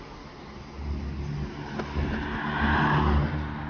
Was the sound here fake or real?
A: real